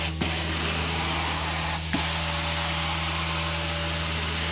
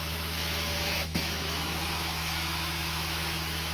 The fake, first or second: second